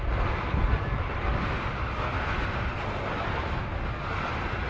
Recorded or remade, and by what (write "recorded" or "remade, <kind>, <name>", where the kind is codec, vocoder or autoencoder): recorded